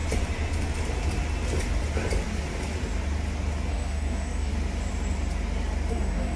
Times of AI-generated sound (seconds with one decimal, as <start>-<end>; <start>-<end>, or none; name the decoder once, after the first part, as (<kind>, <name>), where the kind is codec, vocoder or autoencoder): 3.7-4.5 (codec, DAC); 5.9-6.4